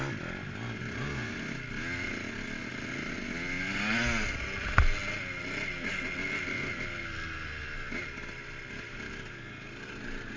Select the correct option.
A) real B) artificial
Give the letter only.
A